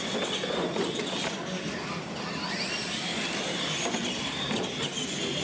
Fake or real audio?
real